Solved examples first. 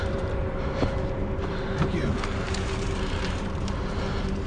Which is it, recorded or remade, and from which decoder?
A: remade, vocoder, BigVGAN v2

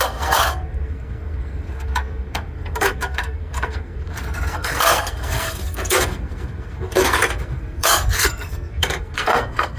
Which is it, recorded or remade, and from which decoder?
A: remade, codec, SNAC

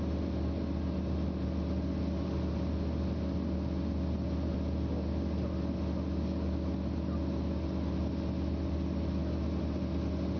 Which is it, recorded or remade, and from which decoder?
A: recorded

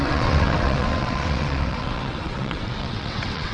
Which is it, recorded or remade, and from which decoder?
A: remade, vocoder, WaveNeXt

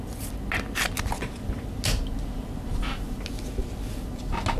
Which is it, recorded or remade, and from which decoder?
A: recorded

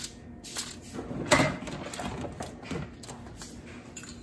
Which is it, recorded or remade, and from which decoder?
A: recorded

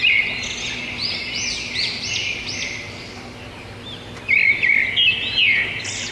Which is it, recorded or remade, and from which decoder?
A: recorded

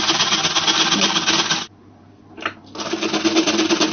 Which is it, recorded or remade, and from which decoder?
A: recorded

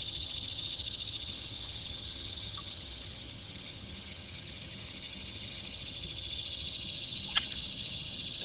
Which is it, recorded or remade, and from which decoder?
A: remade, vocoder, HiFi-GAN